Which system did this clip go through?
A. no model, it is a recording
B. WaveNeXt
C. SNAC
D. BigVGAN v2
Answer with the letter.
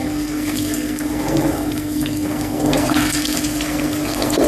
C